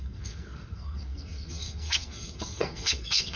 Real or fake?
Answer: fake